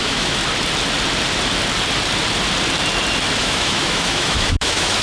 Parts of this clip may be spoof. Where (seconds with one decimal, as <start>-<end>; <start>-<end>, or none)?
0.0-0.4; 3.4-5.0